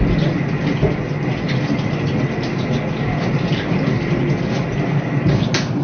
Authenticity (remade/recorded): recorded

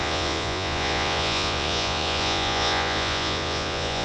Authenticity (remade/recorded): remade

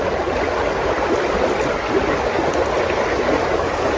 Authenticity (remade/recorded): recorded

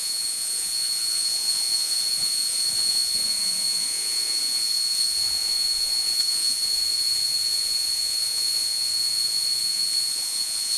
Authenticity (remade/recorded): remade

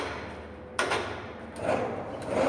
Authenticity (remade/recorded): recorded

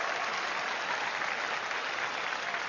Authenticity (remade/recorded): recorded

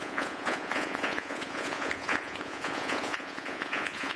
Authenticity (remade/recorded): remade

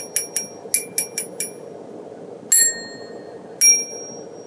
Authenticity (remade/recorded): recorded